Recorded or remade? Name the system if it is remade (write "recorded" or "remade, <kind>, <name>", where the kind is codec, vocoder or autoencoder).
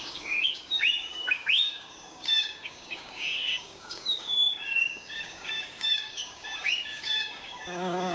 remade, codec, DAC